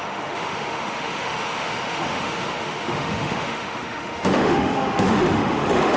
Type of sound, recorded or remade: remade